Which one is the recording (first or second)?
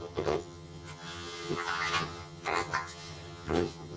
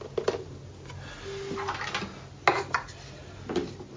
second